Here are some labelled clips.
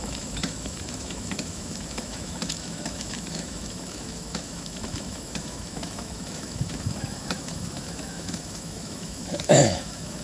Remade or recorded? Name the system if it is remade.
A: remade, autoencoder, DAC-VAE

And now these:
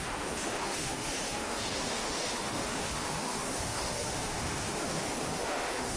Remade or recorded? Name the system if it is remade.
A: remade, autoencoder, DAC-VAE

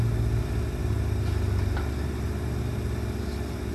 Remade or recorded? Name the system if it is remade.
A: recorded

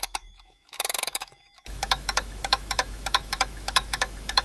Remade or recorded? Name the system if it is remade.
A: remade, autoencoder, DAC-VAE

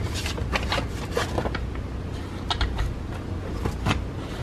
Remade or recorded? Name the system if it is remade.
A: recorded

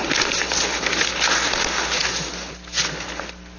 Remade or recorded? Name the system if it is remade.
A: recorded